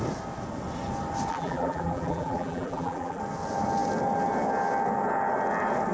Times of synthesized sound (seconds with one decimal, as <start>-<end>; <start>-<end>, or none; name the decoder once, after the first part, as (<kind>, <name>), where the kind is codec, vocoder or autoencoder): 1.3-3.2 (vocoder, BigVGAN v2)